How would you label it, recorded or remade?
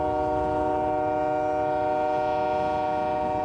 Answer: recorded